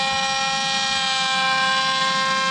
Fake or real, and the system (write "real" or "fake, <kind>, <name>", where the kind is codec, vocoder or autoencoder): real